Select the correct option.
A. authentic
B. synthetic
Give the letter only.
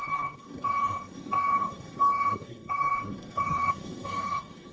B